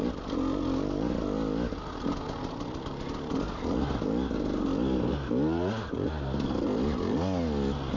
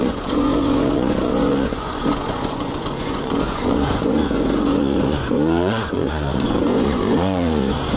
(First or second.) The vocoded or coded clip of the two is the second